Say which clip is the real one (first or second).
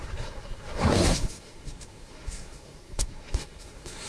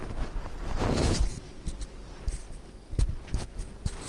second